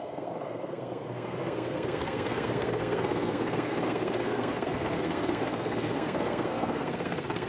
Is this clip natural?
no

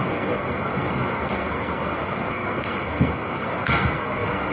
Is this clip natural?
no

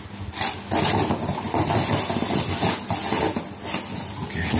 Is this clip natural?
yes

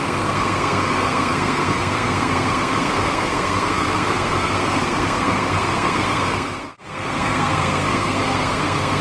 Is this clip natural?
no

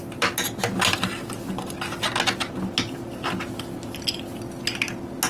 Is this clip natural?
yes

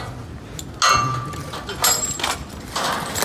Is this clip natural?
yes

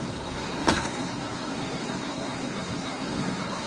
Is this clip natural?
no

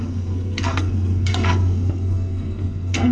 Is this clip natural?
no